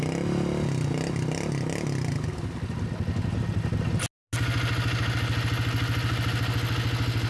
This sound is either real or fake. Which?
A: real